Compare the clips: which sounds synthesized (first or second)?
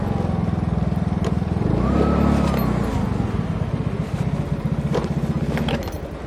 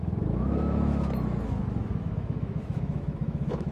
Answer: second